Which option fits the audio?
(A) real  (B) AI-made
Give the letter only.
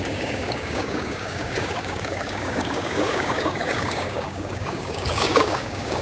B